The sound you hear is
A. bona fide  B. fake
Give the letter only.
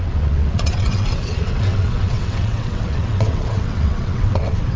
B